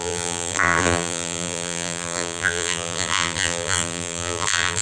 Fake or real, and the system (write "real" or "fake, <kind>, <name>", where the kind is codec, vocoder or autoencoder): fake, vocoder, BigVGAN v2